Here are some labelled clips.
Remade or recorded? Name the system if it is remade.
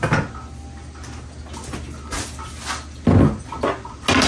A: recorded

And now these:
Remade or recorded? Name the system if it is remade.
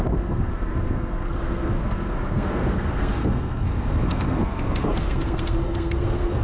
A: remade, codec, SNAC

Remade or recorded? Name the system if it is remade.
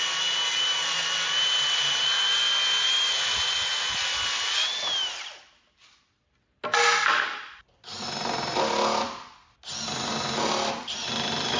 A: recorded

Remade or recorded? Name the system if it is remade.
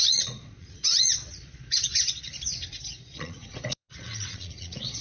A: remade, vocoder, Vocos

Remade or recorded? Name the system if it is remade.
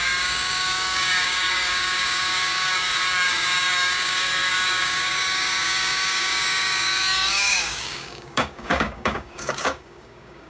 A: remade, codec, DAC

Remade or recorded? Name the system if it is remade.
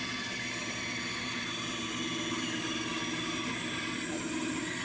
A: recorded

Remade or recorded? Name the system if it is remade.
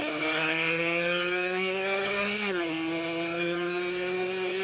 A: remade, codec, SNAC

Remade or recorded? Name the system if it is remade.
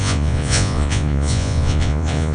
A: remade, vocoder, Vocos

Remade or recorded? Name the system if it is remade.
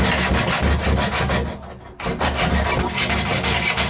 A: recorded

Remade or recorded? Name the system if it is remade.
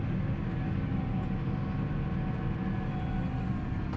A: recorded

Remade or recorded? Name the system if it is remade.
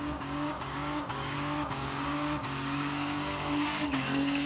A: remade, codec, DAC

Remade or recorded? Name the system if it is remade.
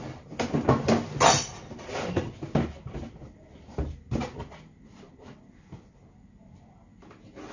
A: recorded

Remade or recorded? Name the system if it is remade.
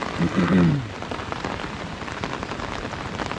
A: remade, vocoder, BigVGAN v2